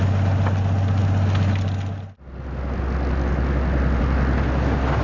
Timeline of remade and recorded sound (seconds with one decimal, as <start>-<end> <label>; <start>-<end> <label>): 0.0-5.0 recorded